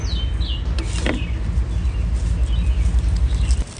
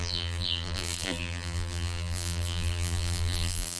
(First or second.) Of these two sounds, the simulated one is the second